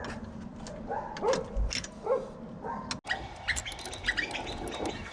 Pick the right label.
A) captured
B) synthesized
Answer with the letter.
A